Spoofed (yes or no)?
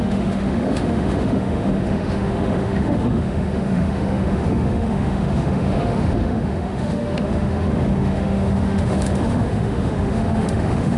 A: yes